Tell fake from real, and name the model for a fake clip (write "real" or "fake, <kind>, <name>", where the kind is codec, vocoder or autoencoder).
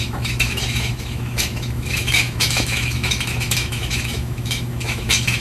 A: fake, autoencoder, DAC-VAE